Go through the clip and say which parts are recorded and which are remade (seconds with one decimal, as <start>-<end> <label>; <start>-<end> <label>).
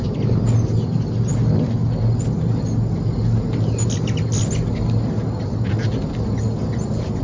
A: 0.0-7.2 recorded